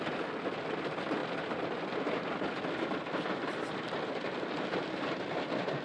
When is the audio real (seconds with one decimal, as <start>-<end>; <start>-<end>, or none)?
0.0-5.8